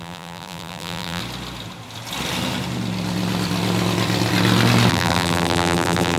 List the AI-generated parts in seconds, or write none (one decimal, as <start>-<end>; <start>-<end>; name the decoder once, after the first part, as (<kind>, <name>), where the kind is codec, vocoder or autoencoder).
0.0-1.2 (vocoder, BigVGAN v2); 4.9-6.2